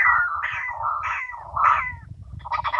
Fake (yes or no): no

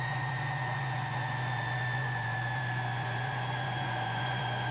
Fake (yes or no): yes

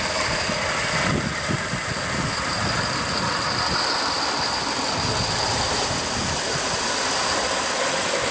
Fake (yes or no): no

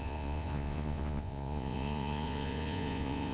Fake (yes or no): yes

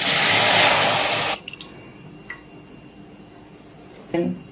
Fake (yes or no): no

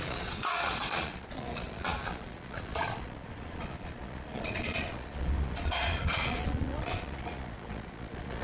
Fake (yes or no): yes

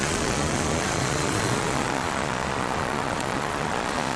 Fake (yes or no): yes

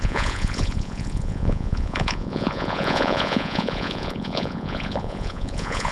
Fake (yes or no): yes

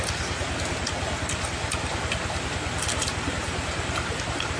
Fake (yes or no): no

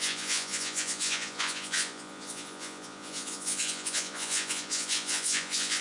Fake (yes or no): yes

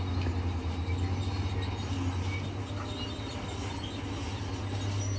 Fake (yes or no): no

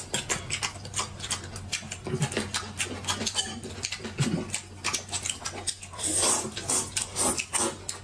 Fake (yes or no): no